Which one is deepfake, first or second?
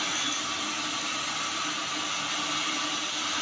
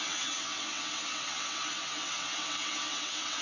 second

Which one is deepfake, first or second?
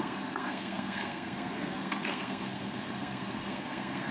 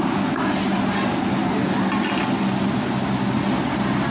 first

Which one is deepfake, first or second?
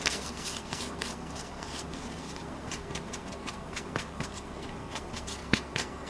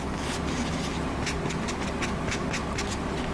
first